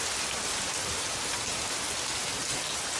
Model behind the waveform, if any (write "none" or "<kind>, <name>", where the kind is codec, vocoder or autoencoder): none